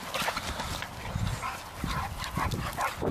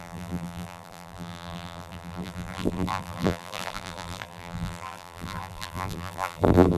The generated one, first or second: second